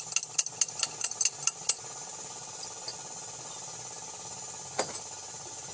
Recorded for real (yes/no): yes